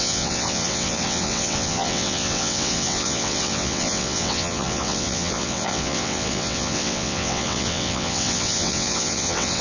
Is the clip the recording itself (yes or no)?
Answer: no